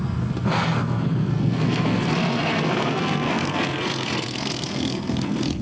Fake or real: fake